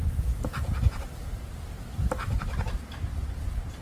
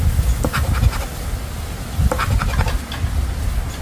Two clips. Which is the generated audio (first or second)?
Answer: first